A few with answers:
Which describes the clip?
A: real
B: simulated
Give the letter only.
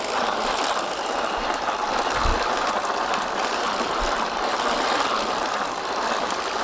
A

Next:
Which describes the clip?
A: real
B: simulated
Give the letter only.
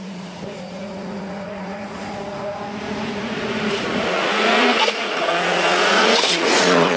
B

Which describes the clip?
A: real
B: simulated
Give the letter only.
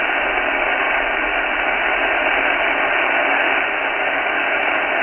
A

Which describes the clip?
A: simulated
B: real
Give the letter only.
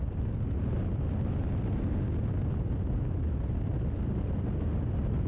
B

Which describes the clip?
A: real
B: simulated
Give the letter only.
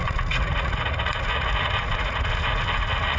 B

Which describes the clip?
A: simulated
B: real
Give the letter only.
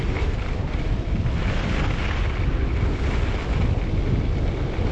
B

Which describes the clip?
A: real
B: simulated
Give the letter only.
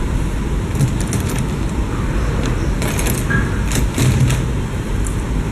A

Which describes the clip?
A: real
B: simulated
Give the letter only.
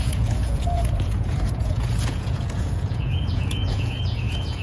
B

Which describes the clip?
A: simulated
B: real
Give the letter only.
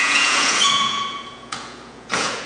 A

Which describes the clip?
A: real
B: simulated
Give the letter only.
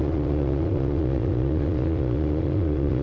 B